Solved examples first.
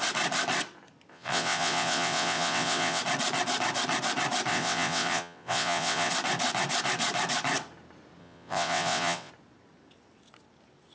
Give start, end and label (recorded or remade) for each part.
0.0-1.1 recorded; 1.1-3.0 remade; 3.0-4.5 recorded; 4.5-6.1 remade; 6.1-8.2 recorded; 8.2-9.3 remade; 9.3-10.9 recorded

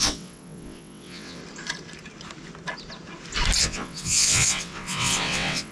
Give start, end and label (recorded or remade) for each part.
0.0-1.4 remade; 1.4-3.6 recorded; 3.6-5.7 remade

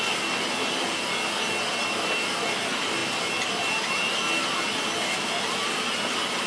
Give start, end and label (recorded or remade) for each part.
0.0-6.5 recorded

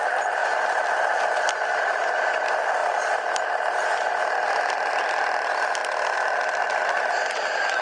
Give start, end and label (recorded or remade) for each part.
0.0-7.8 recorded

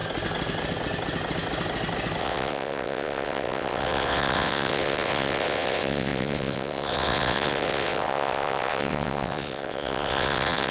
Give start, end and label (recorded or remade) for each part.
0.0-2.2 recorded; 2.2-10.7 remade

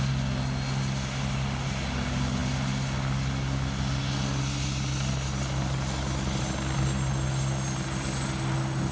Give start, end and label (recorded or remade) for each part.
0.0-8.9 recorded

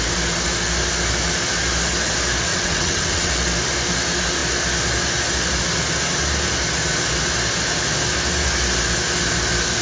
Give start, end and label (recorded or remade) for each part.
0.0-2.5 recorded; 2.5-3.3 remade; 3.3-9.8 recorded